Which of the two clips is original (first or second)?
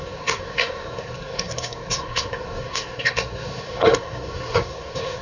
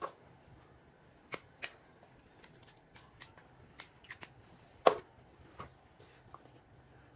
second